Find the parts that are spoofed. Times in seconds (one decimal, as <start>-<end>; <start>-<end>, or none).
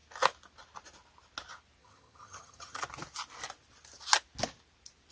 1.8-2.8